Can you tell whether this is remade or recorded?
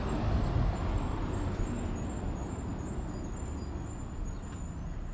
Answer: recorded